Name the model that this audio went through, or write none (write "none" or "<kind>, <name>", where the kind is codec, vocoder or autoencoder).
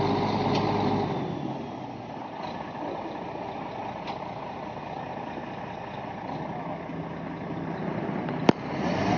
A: none